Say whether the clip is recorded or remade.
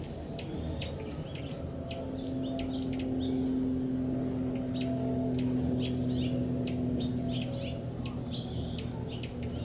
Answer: recorded